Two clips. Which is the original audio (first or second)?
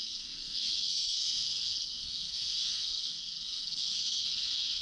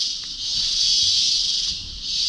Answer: second